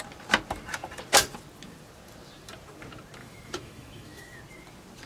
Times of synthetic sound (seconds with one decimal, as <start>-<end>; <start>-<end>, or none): 3.2-4.4